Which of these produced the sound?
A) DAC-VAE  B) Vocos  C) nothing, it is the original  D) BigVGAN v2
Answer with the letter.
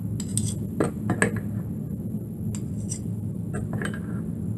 C